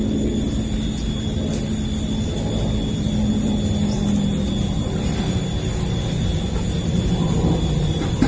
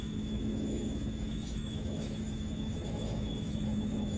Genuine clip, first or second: first